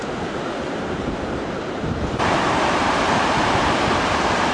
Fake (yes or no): yes